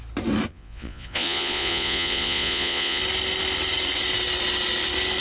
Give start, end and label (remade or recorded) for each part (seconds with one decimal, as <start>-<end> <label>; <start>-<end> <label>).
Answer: 0.0-0.5 recorded; 0.5-3.0 remade; 3.0-5.2 recorded